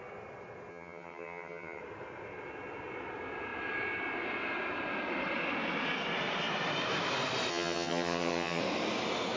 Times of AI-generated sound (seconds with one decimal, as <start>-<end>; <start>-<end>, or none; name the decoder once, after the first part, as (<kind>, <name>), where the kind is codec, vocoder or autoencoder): 0.7-1.8 (vocoder, HiFi-GAN); 7.5-8.6